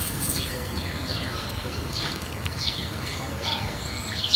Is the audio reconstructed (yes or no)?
yes